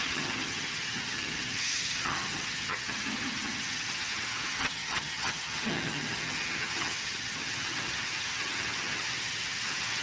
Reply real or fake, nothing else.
fake